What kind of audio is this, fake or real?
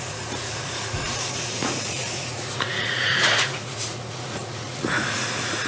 fake